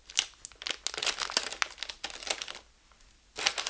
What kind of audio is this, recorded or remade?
recorded